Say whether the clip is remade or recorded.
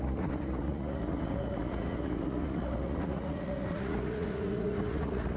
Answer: remade